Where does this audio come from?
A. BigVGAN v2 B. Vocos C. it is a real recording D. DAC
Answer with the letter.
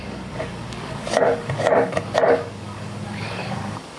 D